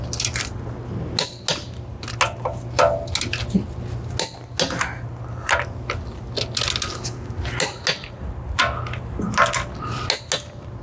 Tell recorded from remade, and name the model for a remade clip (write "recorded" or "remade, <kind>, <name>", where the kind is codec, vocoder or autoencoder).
recorded